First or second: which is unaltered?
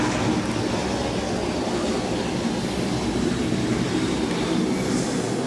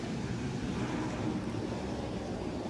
first